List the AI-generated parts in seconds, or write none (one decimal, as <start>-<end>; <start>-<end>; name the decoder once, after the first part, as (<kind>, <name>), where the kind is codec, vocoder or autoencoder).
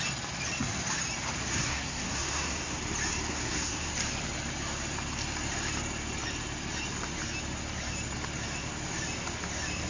1.6-2.8 (codec, SNAC); 3.3-3.9